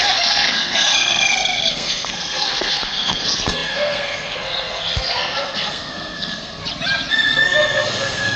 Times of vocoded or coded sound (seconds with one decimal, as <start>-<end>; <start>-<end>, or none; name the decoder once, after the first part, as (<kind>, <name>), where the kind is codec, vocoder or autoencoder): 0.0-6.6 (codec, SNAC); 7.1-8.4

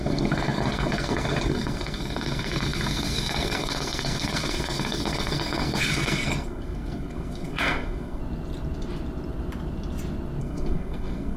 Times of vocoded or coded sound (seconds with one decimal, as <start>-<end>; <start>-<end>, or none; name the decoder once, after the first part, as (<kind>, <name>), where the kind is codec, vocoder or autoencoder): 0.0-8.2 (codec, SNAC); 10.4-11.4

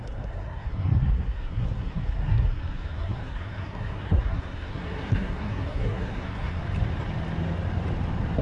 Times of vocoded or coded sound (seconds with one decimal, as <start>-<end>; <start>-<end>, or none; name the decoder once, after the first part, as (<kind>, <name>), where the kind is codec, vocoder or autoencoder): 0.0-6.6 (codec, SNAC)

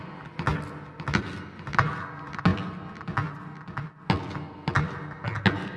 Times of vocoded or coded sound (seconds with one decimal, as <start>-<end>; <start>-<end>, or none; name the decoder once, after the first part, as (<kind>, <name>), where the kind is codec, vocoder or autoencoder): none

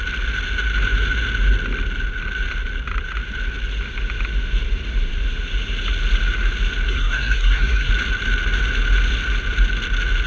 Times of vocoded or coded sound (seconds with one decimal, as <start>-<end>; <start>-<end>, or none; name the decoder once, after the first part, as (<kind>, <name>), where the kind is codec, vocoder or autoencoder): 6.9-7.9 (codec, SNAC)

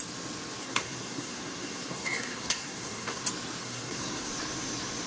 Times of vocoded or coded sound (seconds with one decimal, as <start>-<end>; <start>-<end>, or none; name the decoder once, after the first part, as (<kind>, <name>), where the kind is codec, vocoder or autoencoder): 0.6-3.2 (codec, SNAC); 3.6-4.3